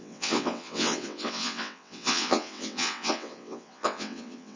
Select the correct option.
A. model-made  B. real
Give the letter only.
A